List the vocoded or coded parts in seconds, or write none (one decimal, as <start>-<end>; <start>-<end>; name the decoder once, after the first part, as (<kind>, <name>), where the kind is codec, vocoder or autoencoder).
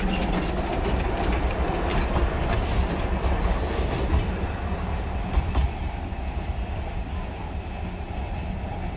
none